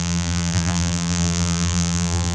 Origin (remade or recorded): remade